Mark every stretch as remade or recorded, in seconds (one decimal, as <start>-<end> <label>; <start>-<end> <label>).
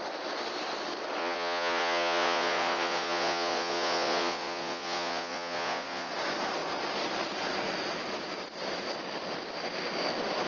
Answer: 0.0-1.2 recorded; 1.2-6.1 remade; 6.1-10.5 recorded